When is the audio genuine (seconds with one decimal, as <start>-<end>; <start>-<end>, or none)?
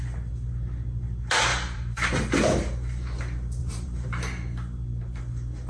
0.0-1.5; 3.2-3.6; 4.2-5.7